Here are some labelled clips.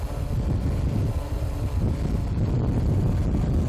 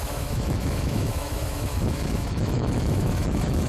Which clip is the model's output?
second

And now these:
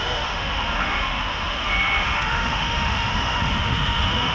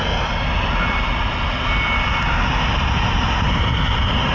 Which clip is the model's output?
first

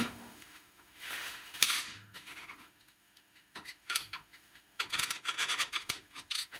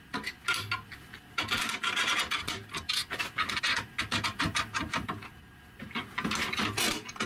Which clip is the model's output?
first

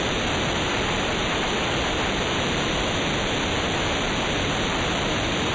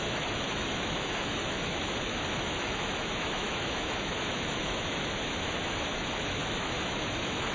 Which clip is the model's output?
second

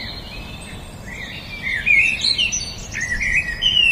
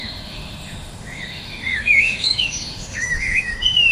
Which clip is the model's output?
second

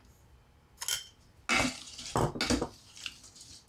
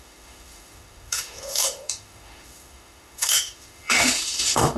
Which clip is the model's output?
second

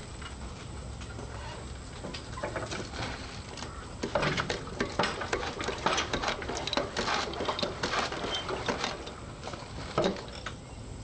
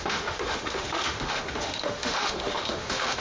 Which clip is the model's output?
second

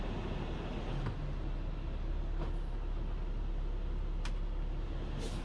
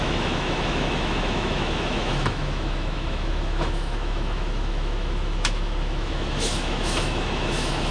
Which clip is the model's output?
second